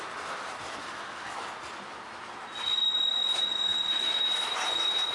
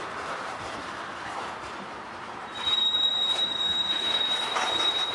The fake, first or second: second